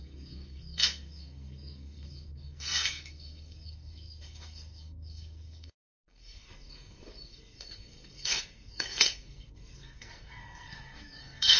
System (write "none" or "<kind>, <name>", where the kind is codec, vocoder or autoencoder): codec, SNAC